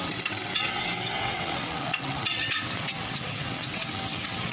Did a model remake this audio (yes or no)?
yes